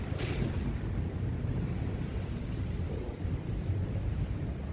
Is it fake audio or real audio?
real